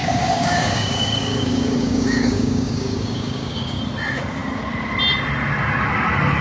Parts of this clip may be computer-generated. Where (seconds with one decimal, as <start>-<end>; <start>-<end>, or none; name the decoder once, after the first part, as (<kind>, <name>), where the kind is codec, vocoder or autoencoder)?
0.0-3.8 (codec, DAC)